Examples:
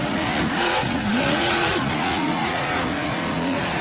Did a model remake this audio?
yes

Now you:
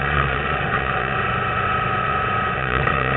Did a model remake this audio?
yes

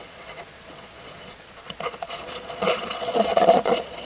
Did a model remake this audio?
yes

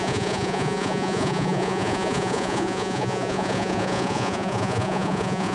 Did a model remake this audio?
yes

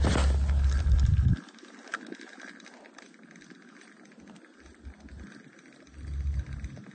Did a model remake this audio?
no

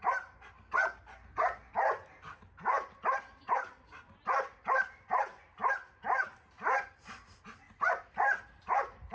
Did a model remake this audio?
no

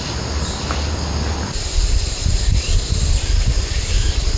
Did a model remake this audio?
no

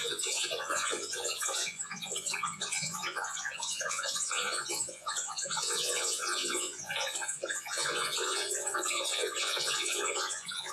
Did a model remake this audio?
yes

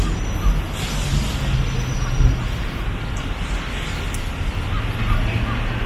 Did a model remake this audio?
no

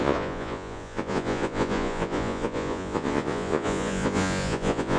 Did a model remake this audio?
yes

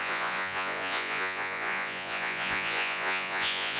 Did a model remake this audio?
yes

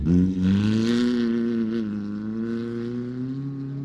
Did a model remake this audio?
no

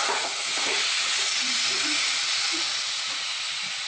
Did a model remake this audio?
yes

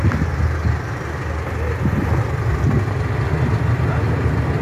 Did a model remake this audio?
no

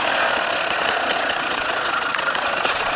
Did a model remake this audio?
yes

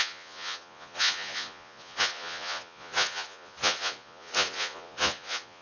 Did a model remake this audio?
yes